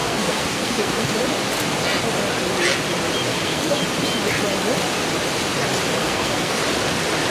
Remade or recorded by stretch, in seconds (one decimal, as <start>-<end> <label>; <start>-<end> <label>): 0.0-1.1 remade; 1.1-3.3 recorded; 3.3-3.8 remade; 3.8-6.0 recorded; 6.0-6.6 remade; 6.6-7.3 recorded